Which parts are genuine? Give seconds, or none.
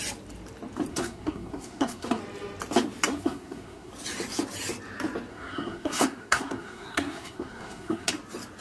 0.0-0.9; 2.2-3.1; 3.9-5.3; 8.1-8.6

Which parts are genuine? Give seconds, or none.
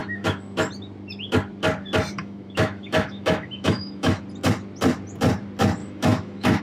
0.7-2.2; 4.2-5.8